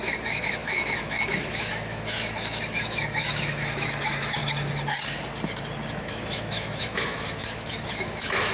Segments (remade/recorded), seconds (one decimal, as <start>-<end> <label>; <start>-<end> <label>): 0.0-4.4 remade; 4.4-5.9 recorded; 5.9-8.5 remade